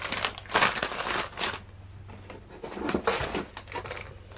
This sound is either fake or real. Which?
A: real